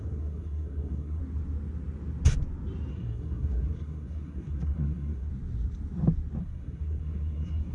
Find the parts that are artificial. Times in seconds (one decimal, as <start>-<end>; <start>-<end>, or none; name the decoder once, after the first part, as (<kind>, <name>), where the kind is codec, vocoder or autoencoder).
0.0-1.2 (codec, SNAC); 2.9-5.3; 6.4-7.7